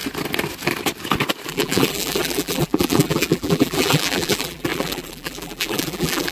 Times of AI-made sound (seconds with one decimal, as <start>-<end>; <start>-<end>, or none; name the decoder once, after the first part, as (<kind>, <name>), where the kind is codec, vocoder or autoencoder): 1.5-6.3 (vocoder, BigVGAN v2)